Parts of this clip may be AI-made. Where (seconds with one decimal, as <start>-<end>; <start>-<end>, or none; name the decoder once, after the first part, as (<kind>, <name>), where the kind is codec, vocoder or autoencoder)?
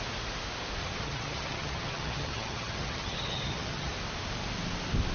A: 0.8-3.9 (vocoder, HiFi-GAN)